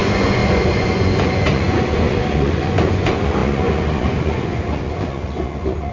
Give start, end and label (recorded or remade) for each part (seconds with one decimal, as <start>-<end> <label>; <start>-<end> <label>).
0.0-5.9 remade